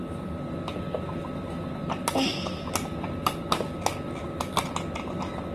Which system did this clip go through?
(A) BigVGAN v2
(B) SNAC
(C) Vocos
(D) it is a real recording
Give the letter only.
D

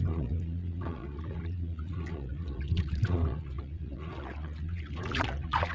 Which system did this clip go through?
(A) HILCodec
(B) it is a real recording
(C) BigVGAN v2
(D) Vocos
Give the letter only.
D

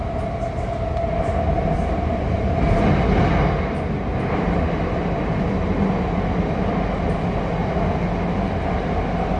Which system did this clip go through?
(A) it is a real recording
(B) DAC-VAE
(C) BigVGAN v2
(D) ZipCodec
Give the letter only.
A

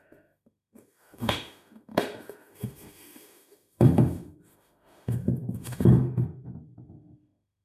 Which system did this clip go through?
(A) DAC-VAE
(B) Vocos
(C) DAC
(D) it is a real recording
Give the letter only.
A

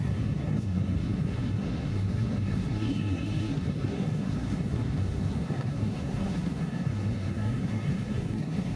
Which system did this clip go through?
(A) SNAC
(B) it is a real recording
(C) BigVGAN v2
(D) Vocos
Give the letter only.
A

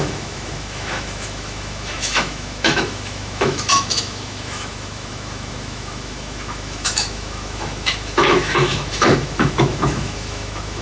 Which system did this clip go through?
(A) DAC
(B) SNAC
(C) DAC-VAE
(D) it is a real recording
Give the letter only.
C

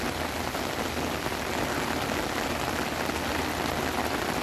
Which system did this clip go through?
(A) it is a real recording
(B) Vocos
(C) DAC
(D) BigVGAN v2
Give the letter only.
A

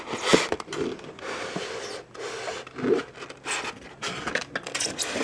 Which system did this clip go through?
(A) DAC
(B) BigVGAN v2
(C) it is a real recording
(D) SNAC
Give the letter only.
C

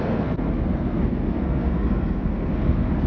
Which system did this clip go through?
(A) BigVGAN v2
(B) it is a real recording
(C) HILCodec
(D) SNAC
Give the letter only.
D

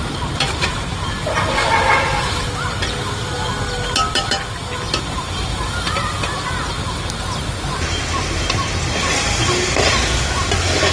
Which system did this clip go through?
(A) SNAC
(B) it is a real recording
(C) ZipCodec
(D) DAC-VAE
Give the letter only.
B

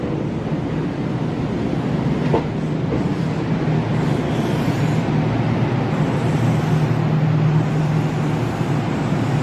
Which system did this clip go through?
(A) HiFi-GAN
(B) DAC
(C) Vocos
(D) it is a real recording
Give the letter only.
D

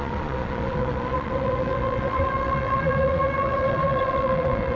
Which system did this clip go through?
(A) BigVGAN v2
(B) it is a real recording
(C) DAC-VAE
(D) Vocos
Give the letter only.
D